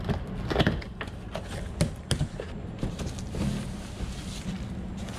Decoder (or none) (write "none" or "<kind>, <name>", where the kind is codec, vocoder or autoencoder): none